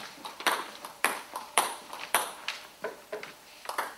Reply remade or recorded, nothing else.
remade